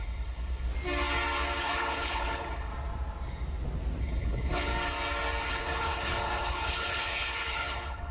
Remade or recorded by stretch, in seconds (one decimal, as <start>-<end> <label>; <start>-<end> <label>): 0.0-0.7 remade; 0.7-1.6 recorded; 1.6-2.7 remade; 2.7-4.0 recorded; 4.0-4.7 remade; 4.7-5.5 recorded; 5.5-8.1 remade